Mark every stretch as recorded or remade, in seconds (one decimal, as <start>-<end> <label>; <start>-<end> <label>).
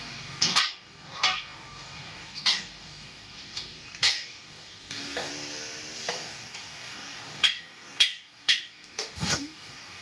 0.0-5.3 remade; 5.3-6.1 recorded; 6.1-10.0 remade